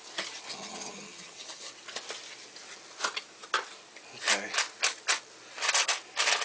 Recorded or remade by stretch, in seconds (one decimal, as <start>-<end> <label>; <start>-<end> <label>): 0.0-0.5 recorded; 0.5-1.7 remade; 1.7-6.4 recorded

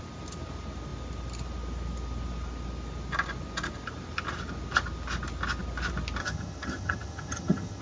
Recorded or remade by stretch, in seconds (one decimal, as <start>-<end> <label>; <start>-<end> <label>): 0.0-6.2 recorded; 6.2-7.8 remade

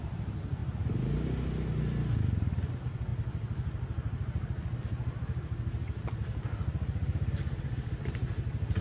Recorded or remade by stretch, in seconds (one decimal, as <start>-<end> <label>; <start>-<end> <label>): 0.0-8.8 recorded

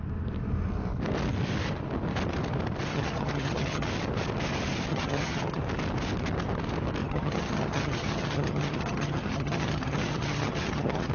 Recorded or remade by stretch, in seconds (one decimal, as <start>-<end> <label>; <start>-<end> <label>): 0.0-2.9 recorded; 2.9-3.9 remade; 3.9-4.9 recorded; 4.9-5.6 remade; 5.6-7.0 recorded; 7.0-11.1 remade

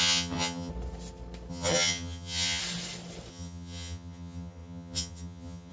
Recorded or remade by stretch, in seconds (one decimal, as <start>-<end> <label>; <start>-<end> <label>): 0.0-0.7 remade; 0.7-1.5 recorded; 1.5-2.6 remade; 2.6-3.3 recorded; 3.3-5.7 remade